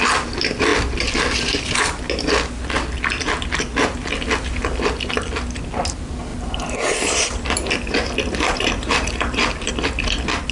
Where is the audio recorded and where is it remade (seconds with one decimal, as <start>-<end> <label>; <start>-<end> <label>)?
0.0-6.3 recorded; 6.3-9.7 remade; 9.7-10.5 recorded